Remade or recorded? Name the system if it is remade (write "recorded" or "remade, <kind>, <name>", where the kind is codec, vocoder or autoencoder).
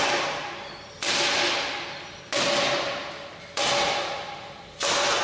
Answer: recorded